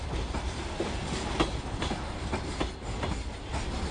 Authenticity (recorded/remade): recorded